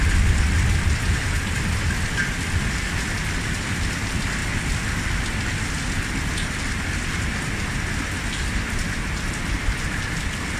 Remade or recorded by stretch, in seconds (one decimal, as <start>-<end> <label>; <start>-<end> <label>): 0.0-10.6 recorded